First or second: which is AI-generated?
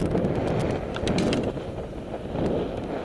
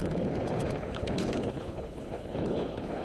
second